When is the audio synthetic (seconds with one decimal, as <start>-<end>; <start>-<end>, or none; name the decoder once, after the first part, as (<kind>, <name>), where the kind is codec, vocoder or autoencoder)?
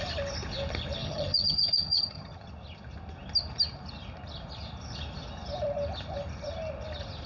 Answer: 1.0-2.5 (vocoder, HiFi-GAN)